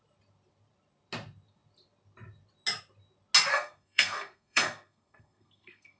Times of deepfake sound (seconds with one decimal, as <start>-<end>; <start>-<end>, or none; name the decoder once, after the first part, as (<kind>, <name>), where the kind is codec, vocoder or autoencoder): 3.5-6.0 (codec, SNAC)